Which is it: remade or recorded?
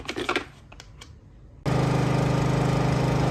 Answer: recorded